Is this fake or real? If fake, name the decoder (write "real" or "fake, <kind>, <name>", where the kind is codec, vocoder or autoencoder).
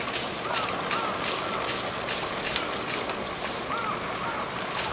real